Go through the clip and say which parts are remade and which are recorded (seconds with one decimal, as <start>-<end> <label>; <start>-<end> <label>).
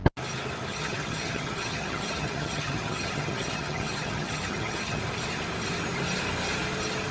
0.0-0.7 recorded; 0.7-5.0 remade; 5.0-7.1 recorded